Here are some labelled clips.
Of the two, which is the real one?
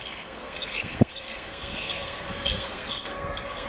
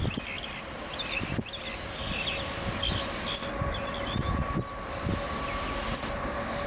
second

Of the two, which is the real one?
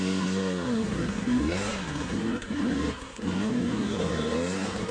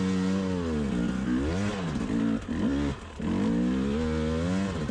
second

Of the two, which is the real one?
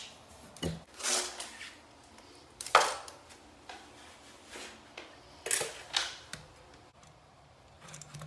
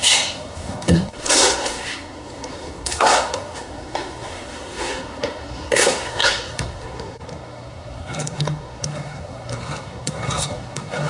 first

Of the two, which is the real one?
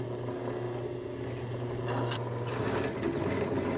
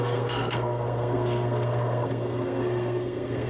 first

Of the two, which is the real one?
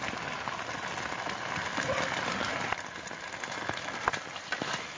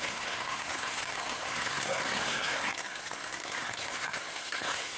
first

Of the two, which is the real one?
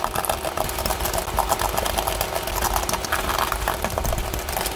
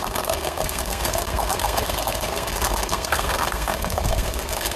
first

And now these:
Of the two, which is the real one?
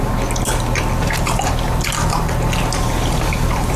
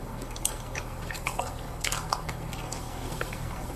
first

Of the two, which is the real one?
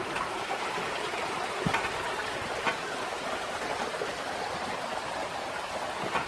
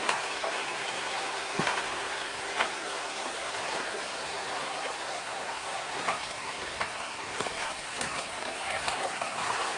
first